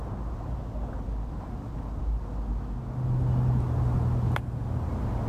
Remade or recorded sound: recorded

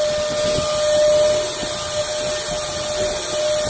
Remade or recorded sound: recorded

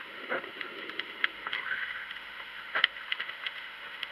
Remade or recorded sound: remade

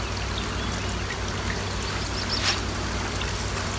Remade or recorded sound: recorded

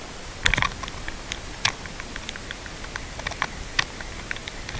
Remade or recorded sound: recorded